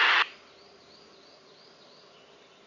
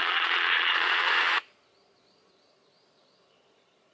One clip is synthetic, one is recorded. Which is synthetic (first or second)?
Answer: second